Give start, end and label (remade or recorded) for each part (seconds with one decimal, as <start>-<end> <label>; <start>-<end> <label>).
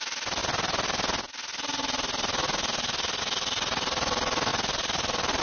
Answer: 0.0-5.4 recorded